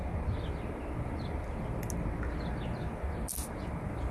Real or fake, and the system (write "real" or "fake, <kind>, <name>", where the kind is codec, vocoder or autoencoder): real